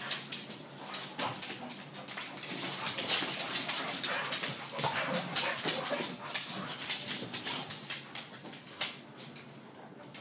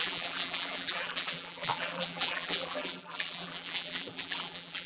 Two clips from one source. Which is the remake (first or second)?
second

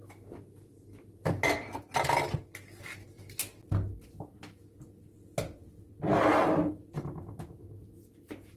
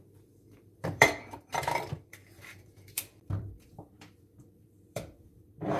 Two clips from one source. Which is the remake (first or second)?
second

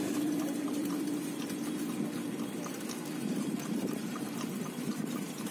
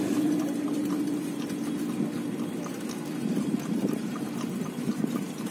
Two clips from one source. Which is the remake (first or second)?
first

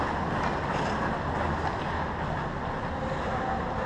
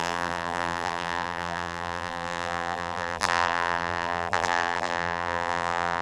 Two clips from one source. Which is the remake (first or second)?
second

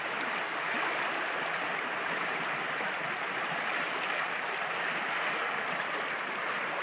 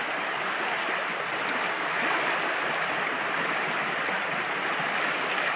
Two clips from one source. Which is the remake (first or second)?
first